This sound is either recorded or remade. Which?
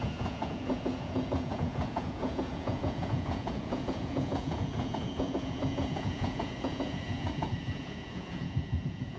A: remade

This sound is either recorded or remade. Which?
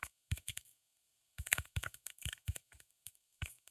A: remade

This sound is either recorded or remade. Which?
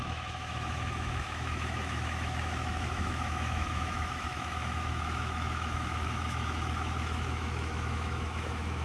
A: remade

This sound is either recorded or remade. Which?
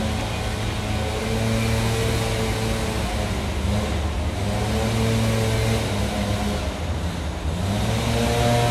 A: recorded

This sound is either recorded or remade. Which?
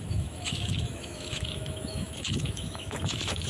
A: remade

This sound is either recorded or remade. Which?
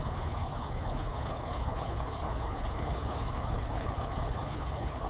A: remade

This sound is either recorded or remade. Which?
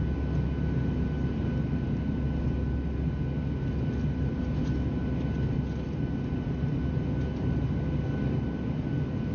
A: recorded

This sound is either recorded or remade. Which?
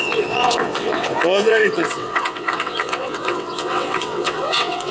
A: remade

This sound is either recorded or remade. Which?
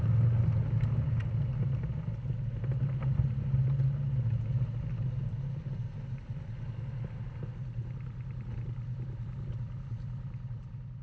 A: recorded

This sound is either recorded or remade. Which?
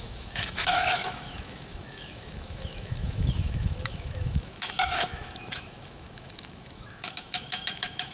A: remade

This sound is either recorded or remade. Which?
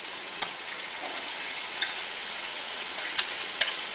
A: remade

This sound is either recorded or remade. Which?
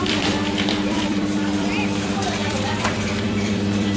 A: remade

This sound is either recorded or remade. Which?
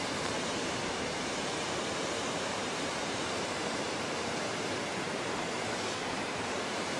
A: remade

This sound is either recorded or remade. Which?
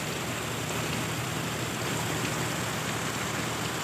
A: recorded